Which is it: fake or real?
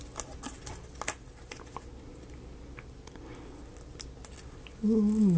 real